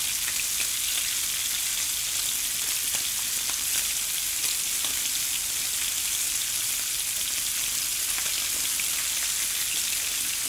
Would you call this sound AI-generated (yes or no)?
no